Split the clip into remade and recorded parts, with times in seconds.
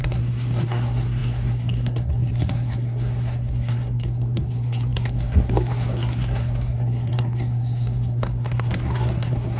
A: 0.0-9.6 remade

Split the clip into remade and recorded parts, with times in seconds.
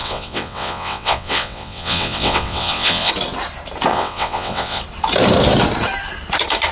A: 0.0-3.1 remade; 3.1-3.9 recorded; 3.9-4.8 remade; 4.8-6.7 recorded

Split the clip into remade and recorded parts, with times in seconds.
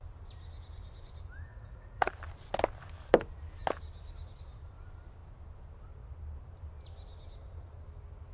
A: 0.0-1.5 recorded; 1.5-2.1 remade; 2.1-8.3 recorded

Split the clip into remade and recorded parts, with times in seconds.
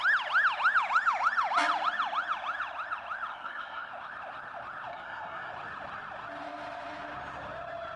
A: 0.0-3.3 recorded; 3.3-3.9 remade; 3.9-4.9 recorded; 4.9-5.5 remade; 5.5-8.0 recorded